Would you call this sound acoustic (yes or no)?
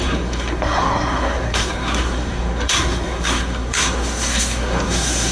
no